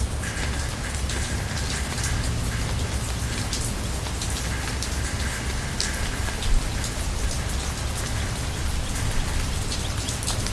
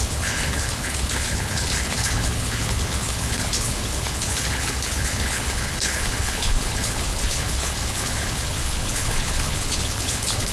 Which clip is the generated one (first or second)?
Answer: second